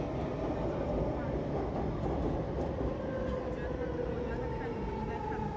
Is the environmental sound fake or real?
real